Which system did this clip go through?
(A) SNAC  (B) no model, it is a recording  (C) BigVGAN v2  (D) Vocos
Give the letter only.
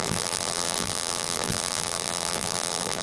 C